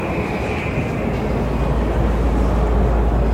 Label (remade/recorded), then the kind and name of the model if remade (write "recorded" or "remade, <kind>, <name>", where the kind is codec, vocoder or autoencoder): recorded